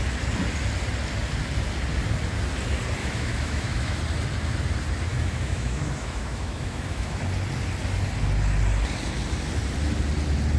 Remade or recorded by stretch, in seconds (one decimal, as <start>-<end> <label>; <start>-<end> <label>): 0.0-3.0 recorded; 3.0-4.0 remade; 4.0-5.1 recorded; 5.1-7.2 remade; 7.2-10.6 recorded